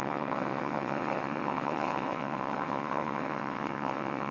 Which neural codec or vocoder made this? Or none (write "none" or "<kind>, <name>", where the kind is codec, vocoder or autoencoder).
vocoder, WaveNeXt